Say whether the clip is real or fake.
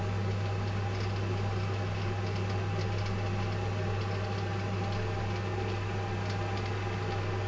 real